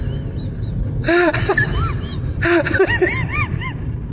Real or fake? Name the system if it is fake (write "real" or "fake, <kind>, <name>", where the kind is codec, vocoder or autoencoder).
fake, vocoder, BigVGAN v2